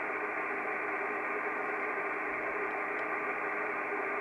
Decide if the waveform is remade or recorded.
recorded